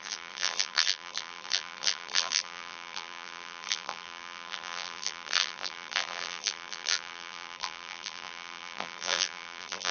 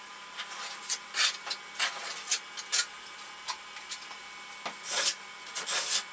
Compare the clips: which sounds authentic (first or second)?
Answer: second